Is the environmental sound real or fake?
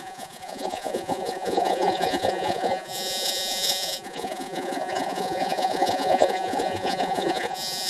fake